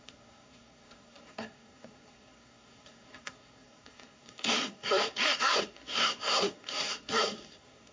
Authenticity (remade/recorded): remade